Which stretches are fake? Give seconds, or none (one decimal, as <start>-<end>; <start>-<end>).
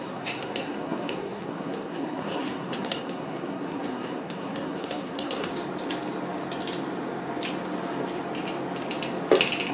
0.0-5.5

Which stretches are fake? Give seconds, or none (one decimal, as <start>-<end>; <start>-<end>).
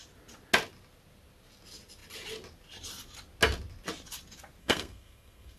4.6-5.6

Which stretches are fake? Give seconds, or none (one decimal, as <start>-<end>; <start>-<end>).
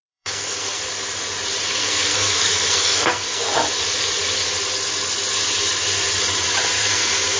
0.0-0.8; 1.8-3.6; 6.8-7.4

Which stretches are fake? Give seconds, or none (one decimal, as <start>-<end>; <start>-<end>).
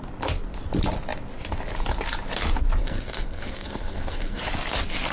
2.8-4.4